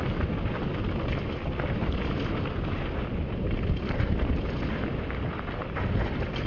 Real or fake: real